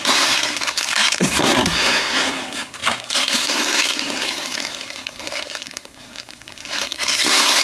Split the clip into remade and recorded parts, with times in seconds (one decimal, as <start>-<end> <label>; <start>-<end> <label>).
0.0-7.6 remade